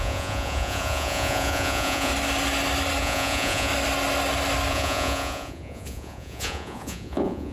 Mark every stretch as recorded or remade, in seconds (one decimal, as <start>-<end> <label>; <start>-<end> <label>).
0.0-2.1 remade; 2.1-3.0 recorded; 3.0-3.7 remade; 3.7-4.7 recorded; 4.7-7.5 remade